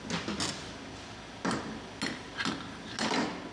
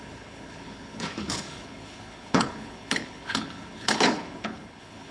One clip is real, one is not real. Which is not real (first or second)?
second